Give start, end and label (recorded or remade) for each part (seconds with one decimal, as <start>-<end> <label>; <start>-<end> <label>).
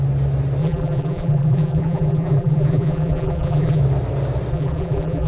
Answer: 0.0-0.6 recorded; 0.6-3.8 remade; 3.8-4.5 recorded; 4.5-5.3 remade